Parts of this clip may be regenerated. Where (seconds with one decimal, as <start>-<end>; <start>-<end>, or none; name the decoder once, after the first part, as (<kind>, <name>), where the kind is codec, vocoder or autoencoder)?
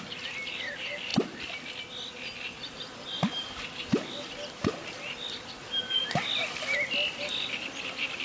none